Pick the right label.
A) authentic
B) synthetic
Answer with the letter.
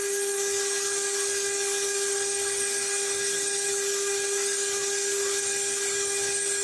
B